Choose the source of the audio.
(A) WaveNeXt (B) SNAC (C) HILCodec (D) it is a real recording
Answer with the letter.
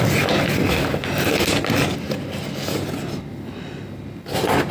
D